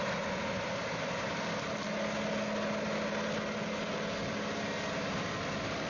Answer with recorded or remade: recorded